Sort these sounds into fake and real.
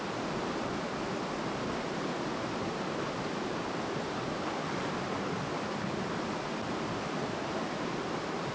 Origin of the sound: real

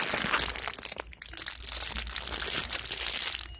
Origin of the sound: real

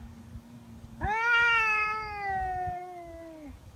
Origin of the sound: fake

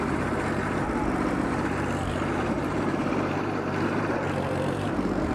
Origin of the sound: fake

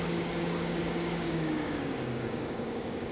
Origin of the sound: fake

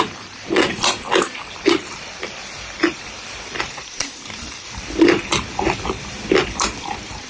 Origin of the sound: fake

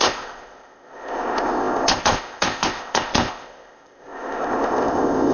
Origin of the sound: fake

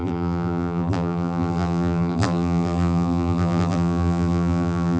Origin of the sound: fake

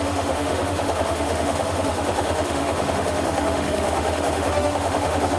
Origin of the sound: fake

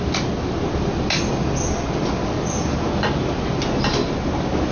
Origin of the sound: real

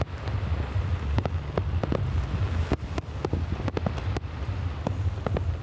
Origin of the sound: real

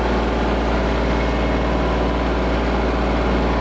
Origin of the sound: real